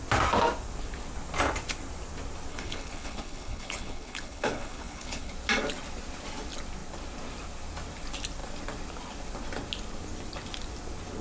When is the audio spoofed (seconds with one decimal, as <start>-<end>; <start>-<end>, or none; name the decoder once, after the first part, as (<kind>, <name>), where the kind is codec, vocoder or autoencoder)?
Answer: 2.5-5.3 (codec, HILCodec)

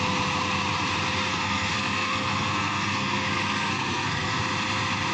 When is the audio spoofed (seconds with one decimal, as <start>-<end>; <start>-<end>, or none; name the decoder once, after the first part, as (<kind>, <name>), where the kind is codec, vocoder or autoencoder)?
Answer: 1.3-4.4 (codec, SNAC)

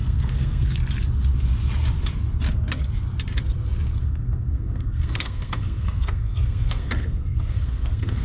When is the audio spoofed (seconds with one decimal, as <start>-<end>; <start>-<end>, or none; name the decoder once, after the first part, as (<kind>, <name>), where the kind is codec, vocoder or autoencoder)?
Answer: 0.0-0.8 (codec, SNAC); 4.0-8.2

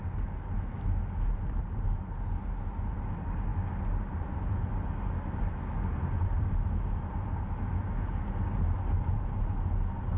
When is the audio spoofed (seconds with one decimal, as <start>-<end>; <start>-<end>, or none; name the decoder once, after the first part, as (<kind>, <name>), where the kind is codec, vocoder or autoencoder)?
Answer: none

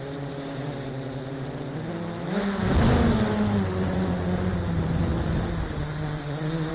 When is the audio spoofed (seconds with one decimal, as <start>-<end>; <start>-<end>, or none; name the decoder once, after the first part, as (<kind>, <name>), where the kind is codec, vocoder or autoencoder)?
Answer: none